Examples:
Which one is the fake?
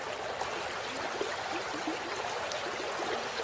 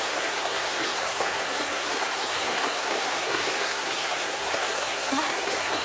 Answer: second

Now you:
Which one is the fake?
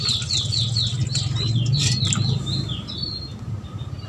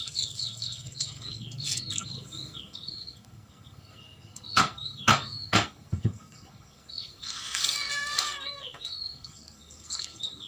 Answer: second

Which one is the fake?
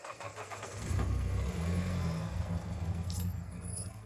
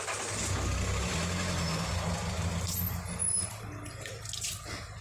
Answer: first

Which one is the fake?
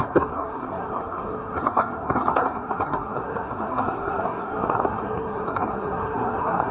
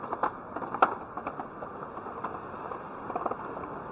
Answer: first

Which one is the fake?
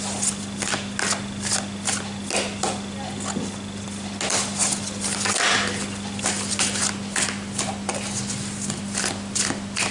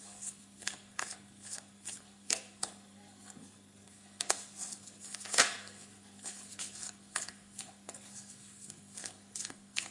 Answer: second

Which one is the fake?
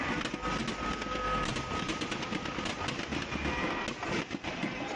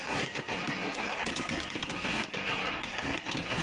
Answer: second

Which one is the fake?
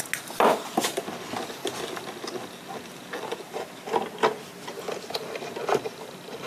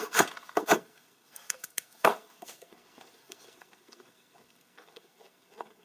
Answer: second